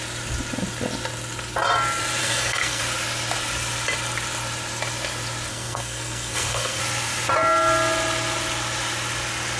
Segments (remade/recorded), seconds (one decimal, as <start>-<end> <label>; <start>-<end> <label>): 0.0-2.2 recorded; 2.2-2.8 remade; 2.8-5.5 recorded; 5.5-6.8 remade; 6.8-9.6 recorded